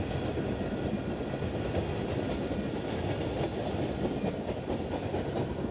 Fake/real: real